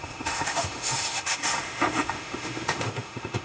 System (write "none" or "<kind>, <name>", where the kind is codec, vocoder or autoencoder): autoencoder, DAC-VAE